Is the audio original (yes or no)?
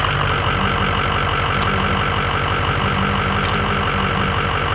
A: yes